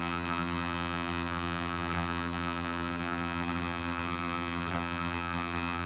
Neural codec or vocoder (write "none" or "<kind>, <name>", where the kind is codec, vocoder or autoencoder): vocoder, BigVGAN v2